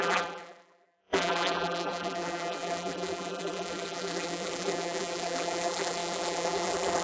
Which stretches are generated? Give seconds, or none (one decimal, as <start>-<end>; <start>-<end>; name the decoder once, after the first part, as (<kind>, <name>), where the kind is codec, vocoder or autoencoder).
0.0-7.0 (vocoder, BigVGAN v2)